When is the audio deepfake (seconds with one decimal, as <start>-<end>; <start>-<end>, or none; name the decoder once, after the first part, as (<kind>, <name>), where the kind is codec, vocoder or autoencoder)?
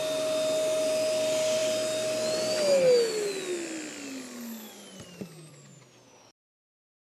none